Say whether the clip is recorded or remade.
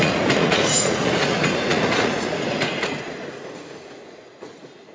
remade